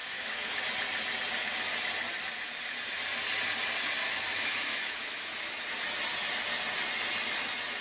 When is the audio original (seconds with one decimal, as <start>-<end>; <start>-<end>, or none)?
0.6-4.0; 5.6-7.8